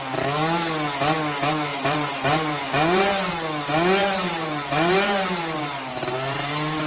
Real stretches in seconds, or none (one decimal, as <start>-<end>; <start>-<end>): 0.0-1.7; 3.3-4.0; 6.5-6.9